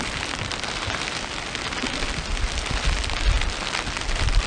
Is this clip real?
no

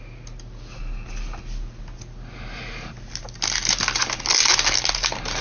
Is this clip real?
yes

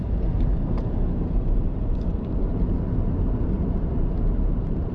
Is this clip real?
no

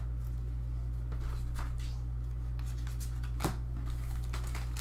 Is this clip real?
yes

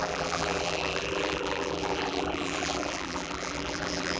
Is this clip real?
no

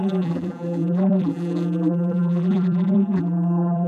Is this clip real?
no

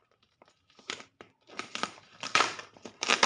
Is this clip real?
no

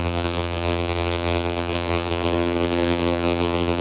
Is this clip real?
no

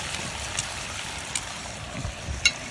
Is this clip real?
no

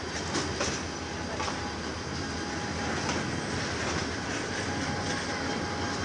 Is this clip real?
yes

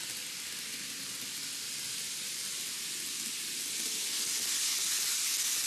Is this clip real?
yes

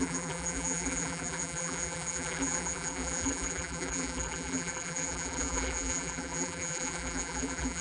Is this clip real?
no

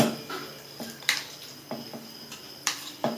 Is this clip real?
no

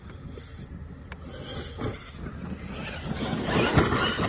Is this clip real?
yes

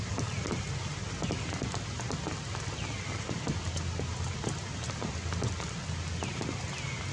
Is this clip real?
yes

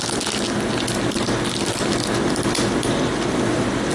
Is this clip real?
no